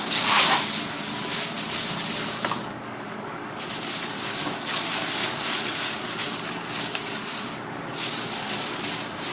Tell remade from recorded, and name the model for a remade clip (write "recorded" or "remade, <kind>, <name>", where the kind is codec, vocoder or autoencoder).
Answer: remade, codec, DAC